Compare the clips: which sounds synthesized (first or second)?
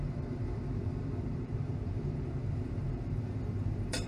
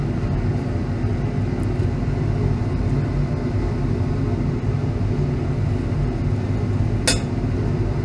first